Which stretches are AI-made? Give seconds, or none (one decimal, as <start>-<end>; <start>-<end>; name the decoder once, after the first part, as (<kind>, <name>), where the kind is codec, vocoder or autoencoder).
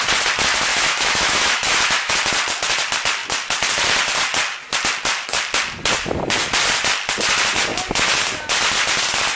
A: 0.7-2.1 (autoencoder, DAC-VAE)